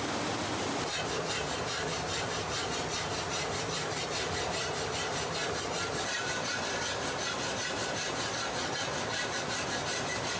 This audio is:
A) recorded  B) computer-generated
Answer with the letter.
A